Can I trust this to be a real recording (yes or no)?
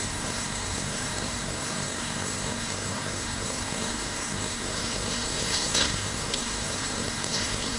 no